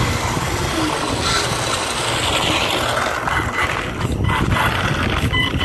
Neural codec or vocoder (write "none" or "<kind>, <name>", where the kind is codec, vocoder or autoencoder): none